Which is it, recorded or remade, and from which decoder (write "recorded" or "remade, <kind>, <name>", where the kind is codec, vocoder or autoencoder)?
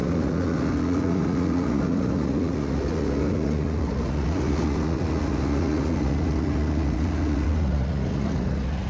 remade, vocoder, Vocos